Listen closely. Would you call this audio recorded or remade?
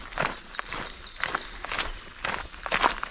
recorded